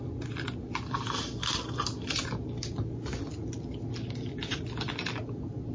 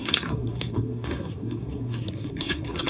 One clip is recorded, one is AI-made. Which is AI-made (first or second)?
second